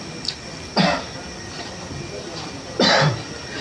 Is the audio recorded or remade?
recorded